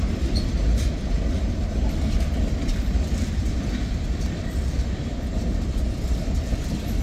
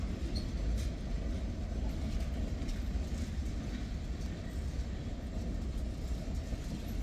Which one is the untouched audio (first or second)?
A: second